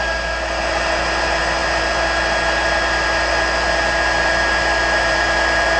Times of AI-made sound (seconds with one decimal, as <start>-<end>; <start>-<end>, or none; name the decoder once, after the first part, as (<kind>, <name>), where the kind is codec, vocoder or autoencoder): none